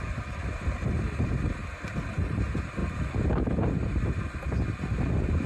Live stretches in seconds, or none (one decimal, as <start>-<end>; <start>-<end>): 1.6-2.1; 2.8-3.6